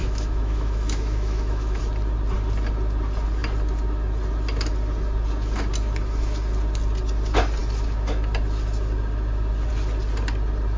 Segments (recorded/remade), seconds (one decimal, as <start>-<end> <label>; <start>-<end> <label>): 0.0-1.8 remade; 1.8-10.8 recorded